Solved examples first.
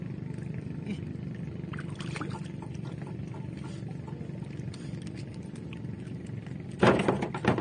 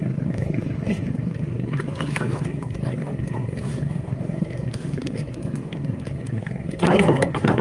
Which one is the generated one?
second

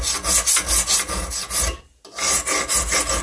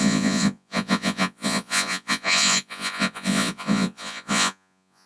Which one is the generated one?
second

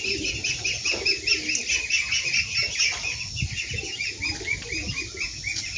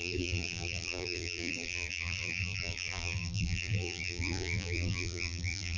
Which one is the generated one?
second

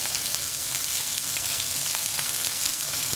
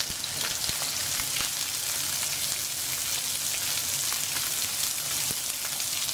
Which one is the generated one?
first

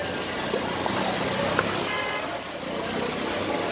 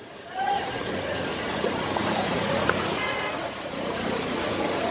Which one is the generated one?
second